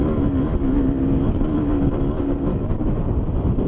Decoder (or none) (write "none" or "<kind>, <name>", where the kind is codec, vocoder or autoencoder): none